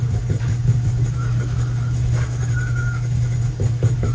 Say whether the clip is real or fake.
fake